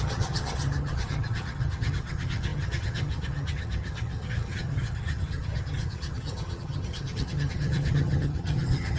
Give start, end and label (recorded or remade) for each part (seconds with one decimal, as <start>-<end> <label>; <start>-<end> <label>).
0.0-9.0 remade